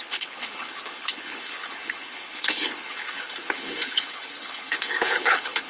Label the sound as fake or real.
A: fake